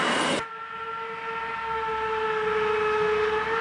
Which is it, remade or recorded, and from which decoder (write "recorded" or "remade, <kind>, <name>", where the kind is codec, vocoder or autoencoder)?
recorded